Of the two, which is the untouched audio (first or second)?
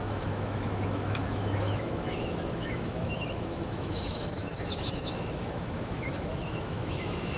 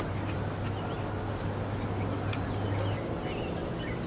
second